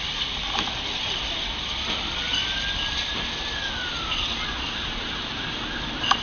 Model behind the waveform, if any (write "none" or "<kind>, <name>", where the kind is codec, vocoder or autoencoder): none